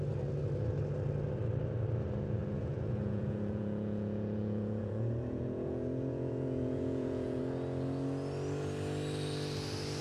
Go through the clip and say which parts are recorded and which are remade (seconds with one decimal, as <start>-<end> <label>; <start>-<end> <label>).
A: 0.0-2.4 recorded; 2.4-7.4 remade; 7.4-10.0 recorded